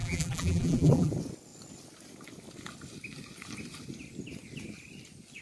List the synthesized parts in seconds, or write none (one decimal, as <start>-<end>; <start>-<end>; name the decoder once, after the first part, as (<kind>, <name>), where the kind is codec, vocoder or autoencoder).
0.0-1.1 (vocoder, BigVGAN v2)